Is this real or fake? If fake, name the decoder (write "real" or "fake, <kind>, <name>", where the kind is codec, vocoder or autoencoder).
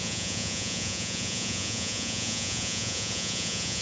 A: fake, vocoder, Vocos